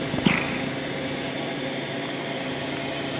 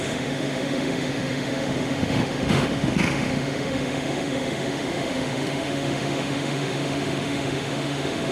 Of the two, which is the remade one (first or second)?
second